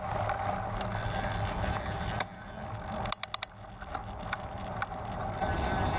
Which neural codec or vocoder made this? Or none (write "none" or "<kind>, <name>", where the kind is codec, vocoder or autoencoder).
none